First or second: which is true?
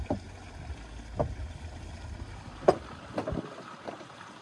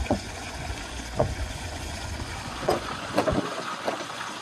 first